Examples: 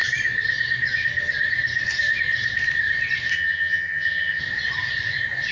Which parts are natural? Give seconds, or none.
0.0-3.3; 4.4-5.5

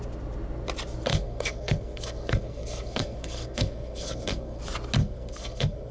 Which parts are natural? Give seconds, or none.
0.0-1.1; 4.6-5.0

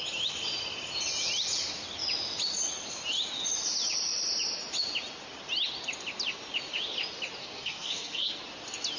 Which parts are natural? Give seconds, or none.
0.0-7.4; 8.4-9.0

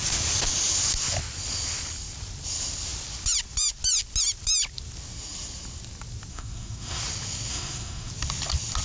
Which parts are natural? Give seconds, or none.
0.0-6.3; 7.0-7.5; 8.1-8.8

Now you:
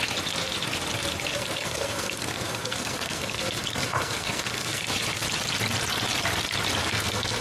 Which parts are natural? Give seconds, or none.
0.0-1.3; 4.8-6.8